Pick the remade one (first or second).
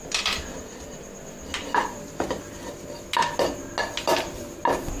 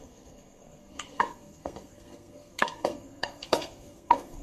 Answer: second